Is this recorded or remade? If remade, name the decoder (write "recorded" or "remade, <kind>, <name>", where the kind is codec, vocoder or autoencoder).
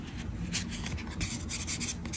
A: recorded